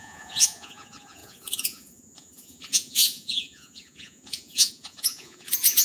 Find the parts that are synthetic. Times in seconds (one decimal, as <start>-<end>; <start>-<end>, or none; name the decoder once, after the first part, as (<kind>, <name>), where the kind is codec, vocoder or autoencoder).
0.0-5.8 (vocoder, Vocos)